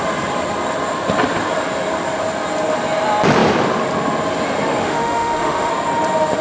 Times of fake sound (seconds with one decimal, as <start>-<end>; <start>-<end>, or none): 4.8-5.7